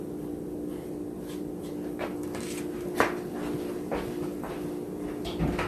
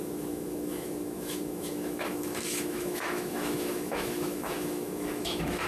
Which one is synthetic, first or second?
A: second